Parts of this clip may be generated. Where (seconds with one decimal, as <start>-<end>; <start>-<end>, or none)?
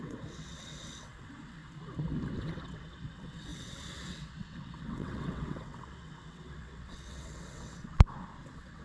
0.0-1.6; 2.4-8.8